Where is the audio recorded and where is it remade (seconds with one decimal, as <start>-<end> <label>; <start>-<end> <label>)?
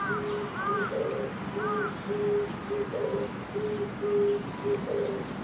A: 0.0-5.4 recorded